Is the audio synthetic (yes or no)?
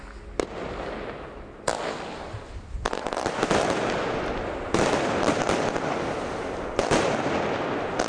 no